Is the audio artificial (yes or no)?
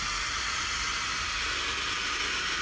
no